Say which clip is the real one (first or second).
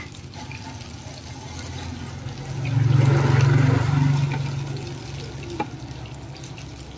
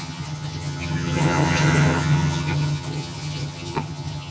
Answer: first